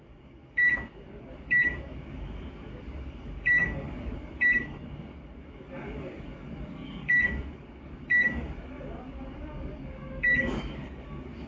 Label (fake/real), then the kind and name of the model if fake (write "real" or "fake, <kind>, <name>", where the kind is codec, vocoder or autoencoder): fake, codec, DAC